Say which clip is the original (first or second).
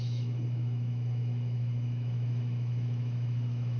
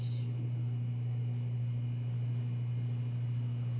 second